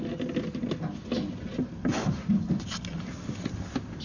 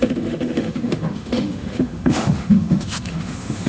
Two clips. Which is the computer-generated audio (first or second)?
second